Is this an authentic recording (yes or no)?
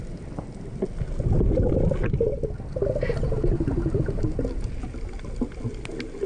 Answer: yes